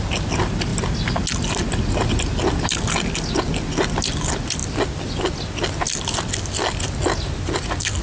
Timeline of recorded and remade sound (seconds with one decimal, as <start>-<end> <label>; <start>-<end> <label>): 0.0-8.0 recorded